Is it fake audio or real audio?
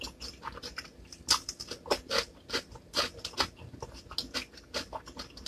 real